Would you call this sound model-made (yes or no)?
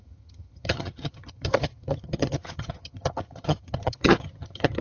yes